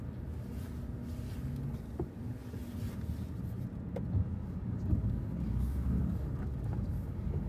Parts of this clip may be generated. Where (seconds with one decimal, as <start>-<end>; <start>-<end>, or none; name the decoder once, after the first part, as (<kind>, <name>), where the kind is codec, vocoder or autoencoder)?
4.3-7.5 (codec, DAC)